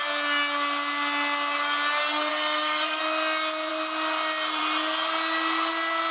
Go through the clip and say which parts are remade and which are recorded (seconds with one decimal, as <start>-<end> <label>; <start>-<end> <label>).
0.0-2.3 recorded; 2.3-3.0 remade; 3.0-6.1 recorded